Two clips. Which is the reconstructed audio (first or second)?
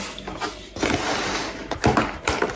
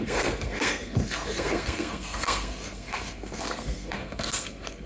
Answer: second